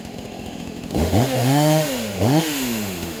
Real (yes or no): no